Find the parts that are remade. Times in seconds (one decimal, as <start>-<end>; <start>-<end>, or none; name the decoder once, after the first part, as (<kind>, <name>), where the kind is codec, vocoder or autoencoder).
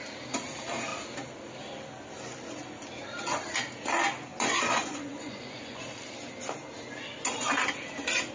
4.3-5.8 (vocoder, Vocos)